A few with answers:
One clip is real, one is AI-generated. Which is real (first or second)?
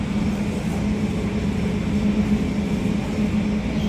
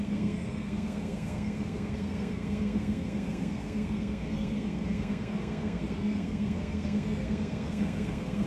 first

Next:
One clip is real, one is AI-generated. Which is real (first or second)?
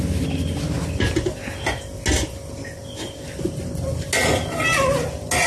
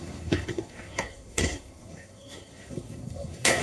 first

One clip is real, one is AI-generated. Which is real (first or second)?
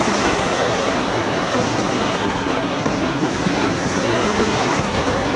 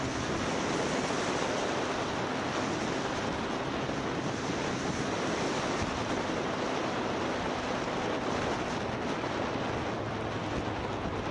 second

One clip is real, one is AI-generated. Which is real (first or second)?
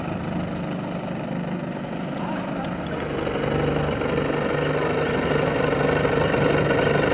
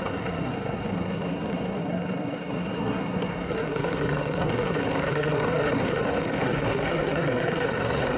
first